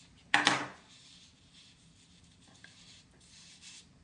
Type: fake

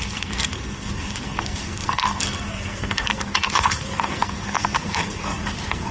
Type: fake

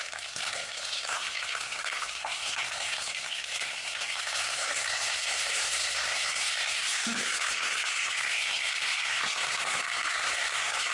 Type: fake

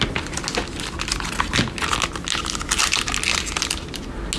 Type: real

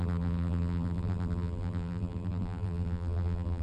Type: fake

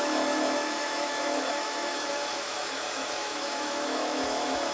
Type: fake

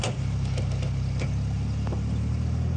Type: real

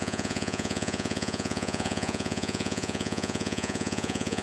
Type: fake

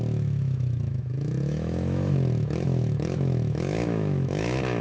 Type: fake